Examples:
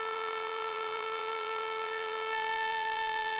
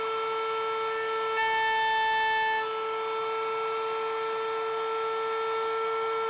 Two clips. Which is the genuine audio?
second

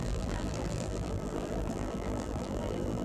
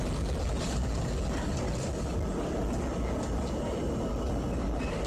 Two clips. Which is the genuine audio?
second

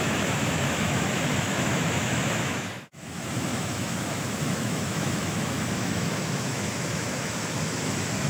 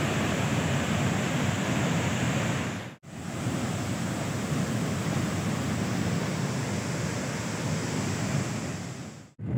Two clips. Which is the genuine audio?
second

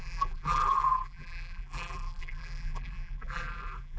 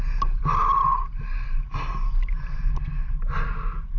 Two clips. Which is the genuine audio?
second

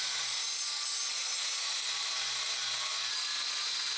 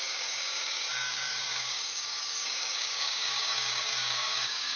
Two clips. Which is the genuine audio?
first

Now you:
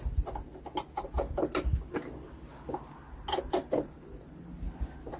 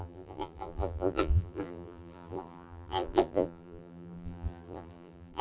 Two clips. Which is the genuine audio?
first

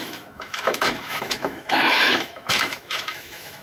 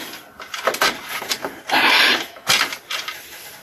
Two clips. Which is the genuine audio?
second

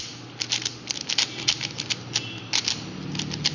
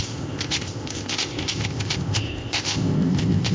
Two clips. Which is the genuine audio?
first